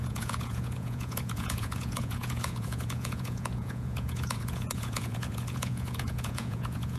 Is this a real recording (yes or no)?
no